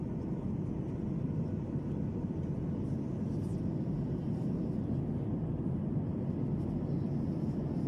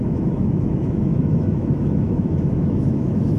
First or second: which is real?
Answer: first